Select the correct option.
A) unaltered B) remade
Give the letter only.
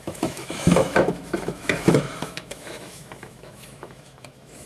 B